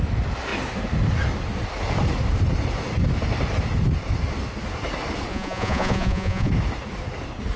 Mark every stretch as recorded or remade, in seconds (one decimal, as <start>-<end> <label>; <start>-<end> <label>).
0.0-5.3 recorded; 5.3-6.5 remade; 6.5-7.6 recorded